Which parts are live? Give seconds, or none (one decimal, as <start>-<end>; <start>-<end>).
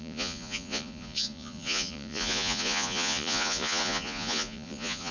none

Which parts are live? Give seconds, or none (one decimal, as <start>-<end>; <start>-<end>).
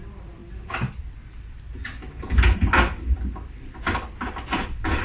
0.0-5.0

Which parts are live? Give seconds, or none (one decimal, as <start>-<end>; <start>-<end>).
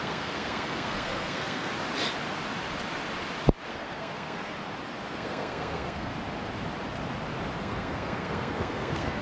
1.7-3.7; 4.5-5.1; 6.1-7.6